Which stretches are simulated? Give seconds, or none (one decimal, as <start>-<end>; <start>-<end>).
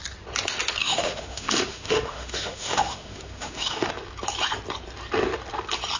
0.8-3.9